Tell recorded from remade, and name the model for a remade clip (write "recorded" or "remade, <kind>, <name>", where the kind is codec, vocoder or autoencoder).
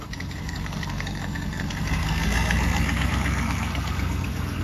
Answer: remade, codec, SNAC